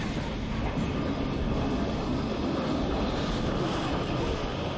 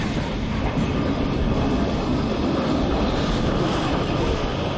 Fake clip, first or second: second